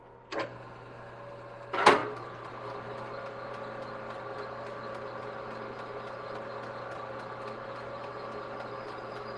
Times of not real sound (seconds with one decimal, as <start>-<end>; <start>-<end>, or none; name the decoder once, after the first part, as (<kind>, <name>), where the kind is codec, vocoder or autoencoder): none